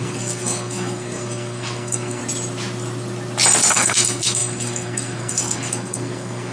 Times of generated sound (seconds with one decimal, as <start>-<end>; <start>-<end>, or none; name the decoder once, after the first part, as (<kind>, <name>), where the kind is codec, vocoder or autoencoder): 0.0-2.2 (codec, SNAC); 3.7-6.5